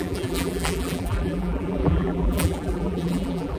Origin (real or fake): fake